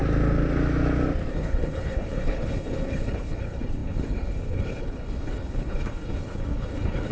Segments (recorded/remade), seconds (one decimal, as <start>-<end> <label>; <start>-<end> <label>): 0.0-1.3 recorded; 1.3-7.1 remade